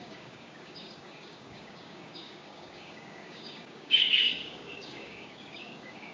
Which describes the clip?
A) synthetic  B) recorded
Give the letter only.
A